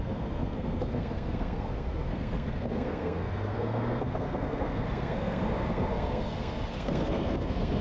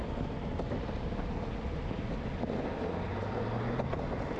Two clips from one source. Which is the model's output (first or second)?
first